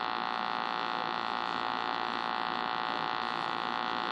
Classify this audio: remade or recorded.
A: recorded